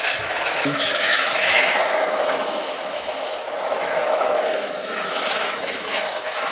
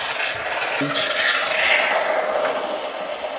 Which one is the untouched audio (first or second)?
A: second